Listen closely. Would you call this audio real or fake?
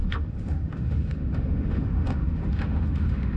fake